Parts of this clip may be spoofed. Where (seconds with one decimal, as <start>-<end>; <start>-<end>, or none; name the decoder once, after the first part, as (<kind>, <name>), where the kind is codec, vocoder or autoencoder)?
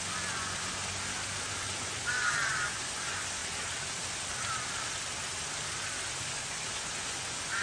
0.0-0.8 (vocoder, Vocos); 1.5-3.4; 6.1-7.6